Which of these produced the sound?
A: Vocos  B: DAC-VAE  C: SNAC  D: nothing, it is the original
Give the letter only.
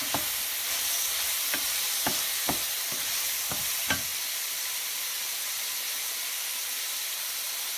D